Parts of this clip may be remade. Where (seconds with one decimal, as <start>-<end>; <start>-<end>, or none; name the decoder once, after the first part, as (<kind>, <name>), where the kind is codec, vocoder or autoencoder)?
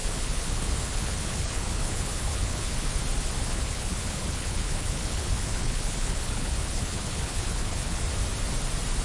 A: 0.0-3.0 (codec, HILCodec); 3.4-8.0